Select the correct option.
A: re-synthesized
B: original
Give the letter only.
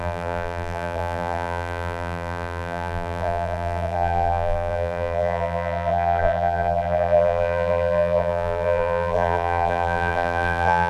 A